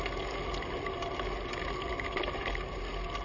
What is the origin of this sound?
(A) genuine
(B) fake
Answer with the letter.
A